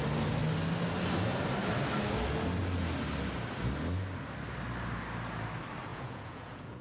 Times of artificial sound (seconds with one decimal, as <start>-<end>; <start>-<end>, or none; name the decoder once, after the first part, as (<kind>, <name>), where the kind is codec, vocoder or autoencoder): 5.9-6.8 (vocoder, Vocos)